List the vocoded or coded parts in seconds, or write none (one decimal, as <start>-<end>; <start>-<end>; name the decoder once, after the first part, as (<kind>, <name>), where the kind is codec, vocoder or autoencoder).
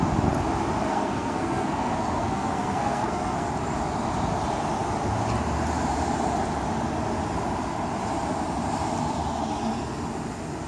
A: 0.9-3.5 (codec, SNAC)